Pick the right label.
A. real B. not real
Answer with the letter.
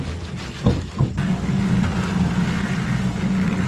A